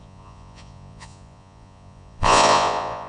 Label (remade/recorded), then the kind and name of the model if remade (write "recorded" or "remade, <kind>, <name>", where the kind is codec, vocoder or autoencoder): remade, vocoder, Vocos